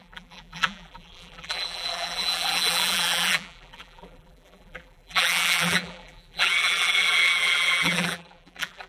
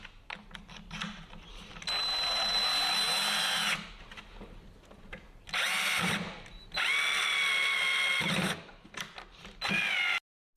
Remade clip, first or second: first